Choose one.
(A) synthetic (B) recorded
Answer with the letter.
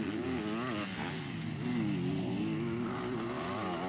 B